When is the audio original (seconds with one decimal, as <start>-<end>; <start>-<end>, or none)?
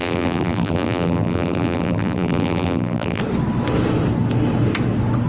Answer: 3.2-5.3